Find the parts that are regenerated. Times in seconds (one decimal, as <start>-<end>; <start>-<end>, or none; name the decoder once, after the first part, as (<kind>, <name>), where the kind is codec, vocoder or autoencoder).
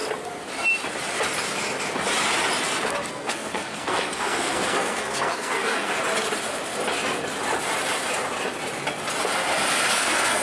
3.1-5.9 (codec, SNAC); 9.9-10.4